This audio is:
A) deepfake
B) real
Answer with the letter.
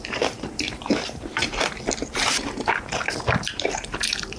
A